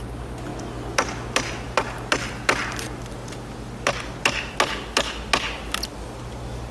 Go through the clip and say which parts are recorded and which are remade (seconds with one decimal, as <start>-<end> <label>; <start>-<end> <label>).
0.0-6.7 recorded